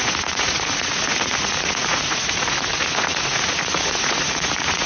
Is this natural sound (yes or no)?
no